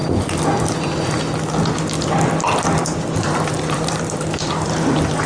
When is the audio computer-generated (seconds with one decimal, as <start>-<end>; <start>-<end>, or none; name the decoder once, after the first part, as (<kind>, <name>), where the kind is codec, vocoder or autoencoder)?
2.8-5.3 (vocoder, BigVGAN v2)